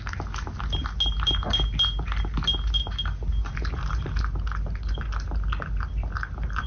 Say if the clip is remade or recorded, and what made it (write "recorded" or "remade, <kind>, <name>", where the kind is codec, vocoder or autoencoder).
recorded